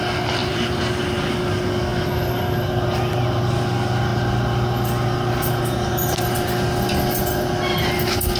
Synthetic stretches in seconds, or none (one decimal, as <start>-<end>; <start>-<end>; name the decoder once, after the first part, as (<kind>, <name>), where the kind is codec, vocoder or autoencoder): 0.4-1.0 (vocoder, BigVGAN v2)

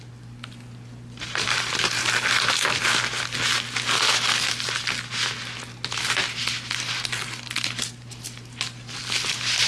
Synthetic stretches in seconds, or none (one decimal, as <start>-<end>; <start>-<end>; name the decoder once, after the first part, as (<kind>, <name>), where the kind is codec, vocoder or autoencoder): none

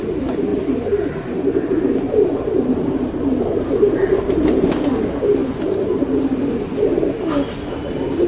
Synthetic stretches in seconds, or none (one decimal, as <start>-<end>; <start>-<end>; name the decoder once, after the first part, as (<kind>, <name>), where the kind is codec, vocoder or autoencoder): 0.0-5.4 (vocoder, BigVGAN v2); 6.0-6.9; 7.5-8.3

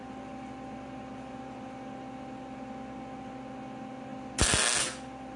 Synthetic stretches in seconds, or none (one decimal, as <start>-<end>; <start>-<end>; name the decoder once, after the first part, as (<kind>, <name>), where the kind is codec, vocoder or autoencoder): none